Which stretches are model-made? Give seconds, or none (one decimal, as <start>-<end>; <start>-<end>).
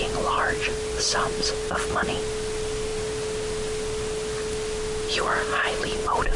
none